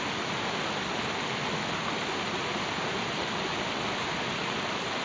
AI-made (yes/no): no